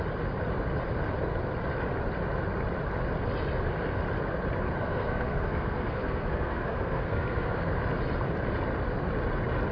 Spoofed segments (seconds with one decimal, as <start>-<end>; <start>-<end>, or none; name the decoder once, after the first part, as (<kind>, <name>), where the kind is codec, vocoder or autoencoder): 4.8-7.7 (codec, SNAC)